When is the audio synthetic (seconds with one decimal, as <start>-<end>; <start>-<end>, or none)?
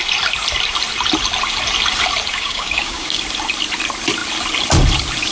2.3-3.2